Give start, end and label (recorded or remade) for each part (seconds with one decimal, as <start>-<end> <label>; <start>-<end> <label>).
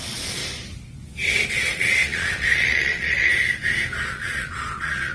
0.0-0.4 remade; 0.4-1.5 recorded; 1.5-3.3 remade; 3.3-4.1 recorded; 4.1-5.1 remade